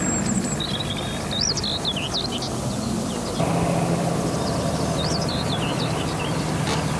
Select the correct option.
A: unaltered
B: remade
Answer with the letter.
A